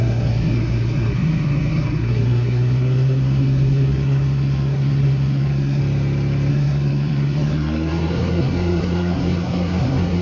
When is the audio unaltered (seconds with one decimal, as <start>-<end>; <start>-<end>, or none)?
5.8-6.5